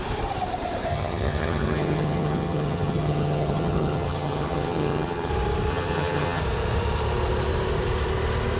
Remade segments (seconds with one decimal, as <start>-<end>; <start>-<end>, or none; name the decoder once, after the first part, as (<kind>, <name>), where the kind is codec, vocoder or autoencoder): 0.9-5.3 (vocoder, HiFi-GAN); 5.7-6.4